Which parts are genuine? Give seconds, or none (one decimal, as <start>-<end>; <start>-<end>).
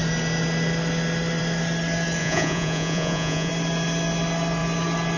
0.0-2.2; 3.5-5.2